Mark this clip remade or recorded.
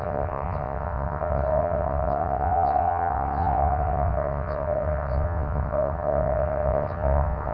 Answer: remade